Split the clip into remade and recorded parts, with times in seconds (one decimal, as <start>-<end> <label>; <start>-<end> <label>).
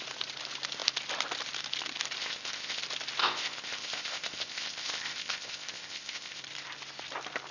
0.0-2.2 recorded; 2.2-2.8 remade; 2.8-3.2 recorded; 3.2-6.4 remade; 6.4-7.5 recorded